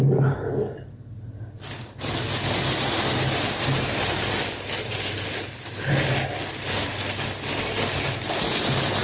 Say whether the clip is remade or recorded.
recorded